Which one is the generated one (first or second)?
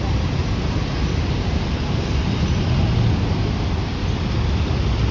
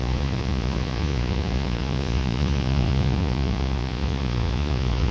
second